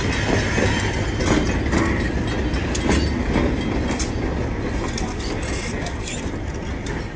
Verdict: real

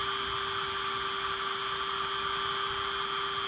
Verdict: real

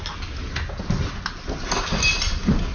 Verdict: real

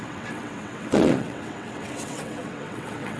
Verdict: fake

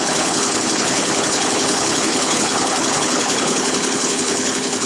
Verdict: fake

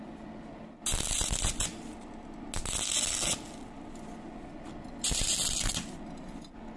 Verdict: real